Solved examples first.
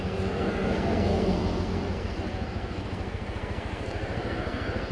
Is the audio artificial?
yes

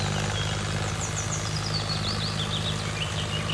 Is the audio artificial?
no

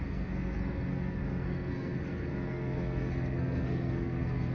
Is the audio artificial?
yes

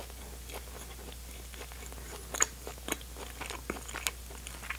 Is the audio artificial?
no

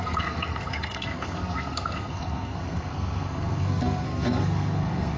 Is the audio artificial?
yes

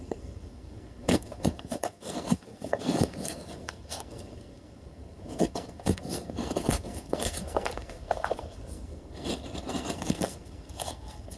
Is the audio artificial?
yes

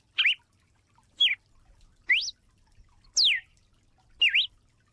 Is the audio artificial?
no